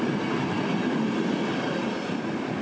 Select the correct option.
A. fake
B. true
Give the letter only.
B